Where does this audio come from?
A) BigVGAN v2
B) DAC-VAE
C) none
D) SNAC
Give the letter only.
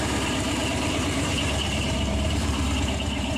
A